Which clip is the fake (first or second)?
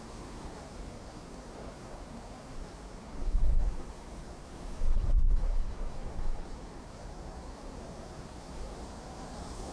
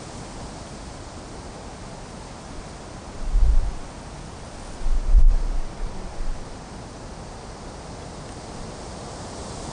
first